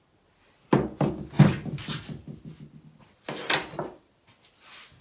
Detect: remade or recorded recorded